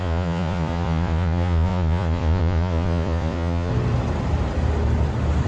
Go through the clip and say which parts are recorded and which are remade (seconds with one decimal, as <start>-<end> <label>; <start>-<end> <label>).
0.0-3.7 remade; 3.7-5.5 recorded